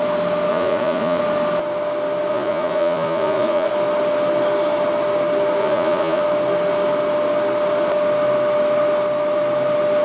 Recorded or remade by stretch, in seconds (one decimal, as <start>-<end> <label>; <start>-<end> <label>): 0.0-0.5 recorded; 0.5-1.2 remade; 1.2-2.3 recorded; 2.3-3.7 remade; 3.7-5.6 recorded; 5.6-6.2 remade; 6.2-10.0 recorded